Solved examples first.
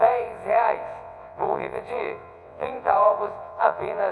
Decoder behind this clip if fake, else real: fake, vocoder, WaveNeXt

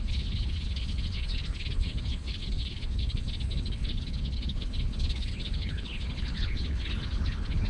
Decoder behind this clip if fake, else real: fake, codec, HILCodec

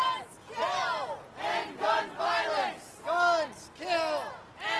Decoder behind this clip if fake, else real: real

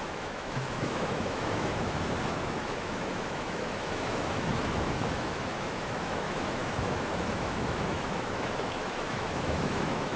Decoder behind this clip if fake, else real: fake, autoencoder, DAC-VAE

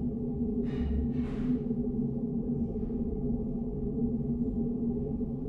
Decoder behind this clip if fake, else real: fake, vocoder, BigVGAN v2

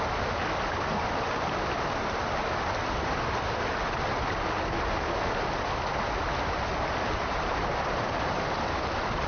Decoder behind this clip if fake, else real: real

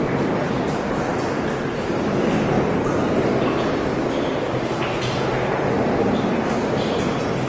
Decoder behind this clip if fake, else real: real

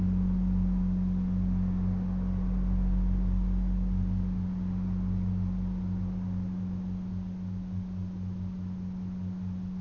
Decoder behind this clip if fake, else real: real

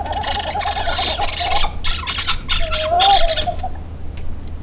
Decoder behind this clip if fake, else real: real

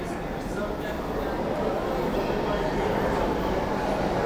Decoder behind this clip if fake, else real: real